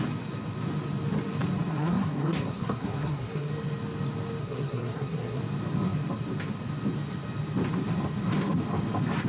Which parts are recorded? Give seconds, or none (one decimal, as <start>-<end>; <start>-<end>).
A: 0.0-1.7; 3.5-4.4; 5.4-9.3

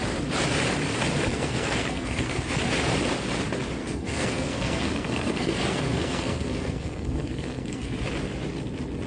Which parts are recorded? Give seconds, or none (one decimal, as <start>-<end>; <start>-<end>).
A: 0.0-1.3; 2.6-3.8; 8.0-9.1

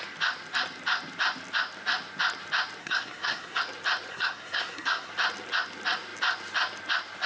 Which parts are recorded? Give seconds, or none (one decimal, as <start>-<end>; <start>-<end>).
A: 0.0-2.8; 3.6-4.1; 5.1-7.3

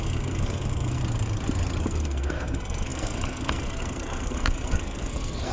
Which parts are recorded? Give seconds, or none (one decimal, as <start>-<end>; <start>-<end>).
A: 1.0-1.8